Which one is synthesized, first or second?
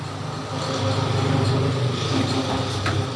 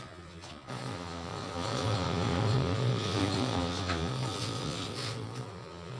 second